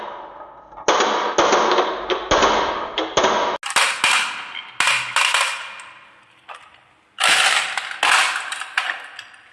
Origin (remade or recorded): recorded